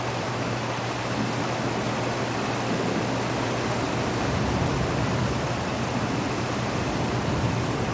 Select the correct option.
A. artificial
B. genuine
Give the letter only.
B